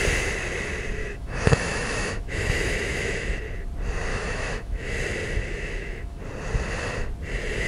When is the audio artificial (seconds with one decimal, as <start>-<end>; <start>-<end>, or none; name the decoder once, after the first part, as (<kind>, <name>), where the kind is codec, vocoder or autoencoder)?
1.0-3.4 (autoencoder, DAC-VAE); 4.1-4.9; 5.4-6.2